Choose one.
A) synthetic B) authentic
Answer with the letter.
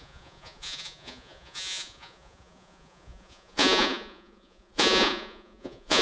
A